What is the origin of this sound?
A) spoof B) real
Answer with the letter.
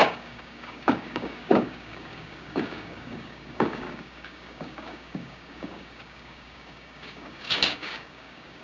A